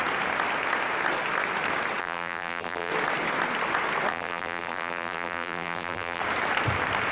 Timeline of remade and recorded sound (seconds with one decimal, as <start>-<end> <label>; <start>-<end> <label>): 0.0-2.0 recorded; 2.0-2.9 remade; 2.9-4.1 recorded; 4.1-6.2 remade; 6.2-7.1 recorded